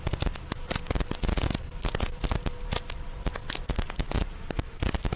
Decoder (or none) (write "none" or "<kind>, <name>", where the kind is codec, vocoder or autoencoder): none